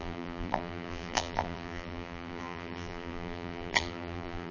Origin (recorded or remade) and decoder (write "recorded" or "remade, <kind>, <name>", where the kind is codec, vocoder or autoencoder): remade, vocoder, BigVGAN v2